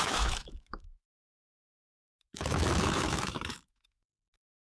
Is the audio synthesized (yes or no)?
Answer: yes